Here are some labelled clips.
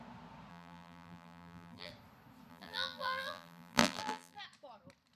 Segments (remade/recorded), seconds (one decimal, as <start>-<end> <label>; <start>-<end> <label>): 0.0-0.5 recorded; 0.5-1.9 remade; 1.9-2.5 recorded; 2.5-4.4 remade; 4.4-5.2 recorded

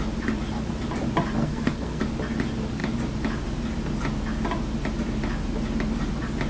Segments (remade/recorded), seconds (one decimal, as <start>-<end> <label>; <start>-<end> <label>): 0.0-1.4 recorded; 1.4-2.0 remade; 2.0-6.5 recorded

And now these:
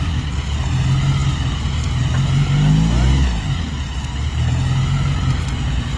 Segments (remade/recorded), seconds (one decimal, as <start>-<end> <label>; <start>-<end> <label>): 0.0-6.0 recorded

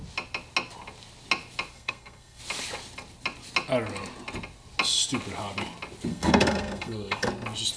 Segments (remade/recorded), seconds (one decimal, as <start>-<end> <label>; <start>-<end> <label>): 0.0-1.7 recorded; 1.7-2.4 remade; 2.4-6.1 recorded; 6.1-7.3 remade; 7.3-7.8 recorded